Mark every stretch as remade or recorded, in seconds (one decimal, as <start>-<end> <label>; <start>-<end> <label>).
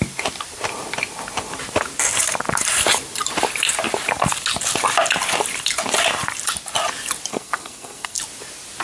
0.0-7.3 recorded; 7.3-8.2 remade; 8.2-8.8 recorded